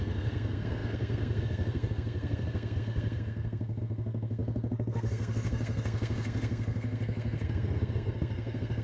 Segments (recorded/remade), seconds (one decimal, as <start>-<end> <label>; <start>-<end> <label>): 0.0-8.8 remade